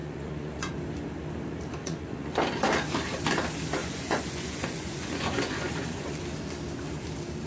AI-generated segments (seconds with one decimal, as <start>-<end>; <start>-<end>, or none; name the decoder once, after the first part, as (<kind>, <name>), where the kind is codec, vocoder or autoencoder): 0.0-0.7 (vocoder, Vocos); 1.8-2.3; 3.8-6.2